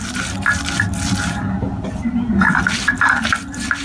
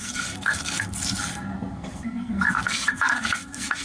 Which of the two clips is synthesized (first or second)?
second